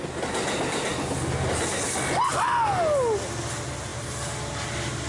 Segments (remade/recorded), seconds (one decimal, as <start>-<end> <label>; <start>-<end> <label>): 0.0-5.1 recorded